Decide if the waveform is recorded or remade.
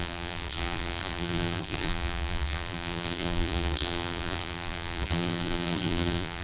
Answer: remade